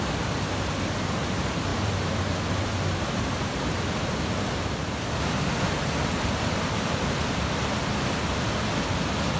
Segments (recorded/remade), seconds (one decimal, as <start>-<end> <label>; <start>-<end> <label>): 0.0-1.7 recorded; 1.7-5.2 remade; 5.2-9.4 recorded